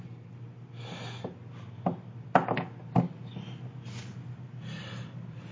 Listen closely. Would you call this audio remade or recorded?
recorded